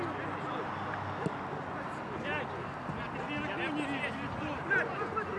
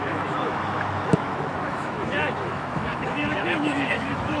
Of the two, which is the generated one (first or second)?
second